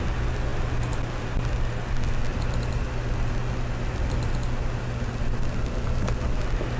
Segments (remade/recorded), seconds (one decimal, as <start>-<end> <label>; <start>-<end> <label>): 0.0-2.3 recorded; 2.3-6.8 remade